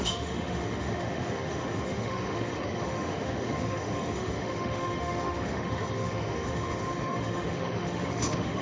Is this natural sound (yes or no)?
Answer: no